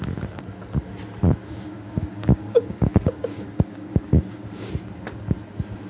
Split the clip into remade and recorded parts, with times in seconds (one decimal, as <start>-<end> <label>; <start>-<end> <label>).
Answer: 0.0-1.4 recorded; 1.4-4.7 remade; 4.7-5.9 recorded